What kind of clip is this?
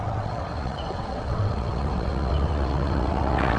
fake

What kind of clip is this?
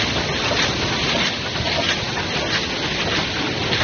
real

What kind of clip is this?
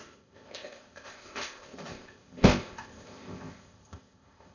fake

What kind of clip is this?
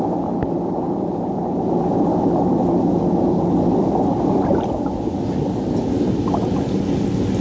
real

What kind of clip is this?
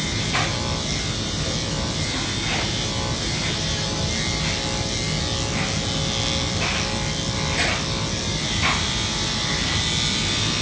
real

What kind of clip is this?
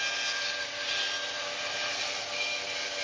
real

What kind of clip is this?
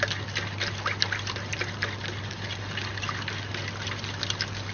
real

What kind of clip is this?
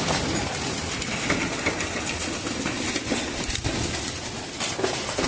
real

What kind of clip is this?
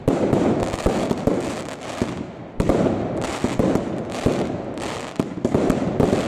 real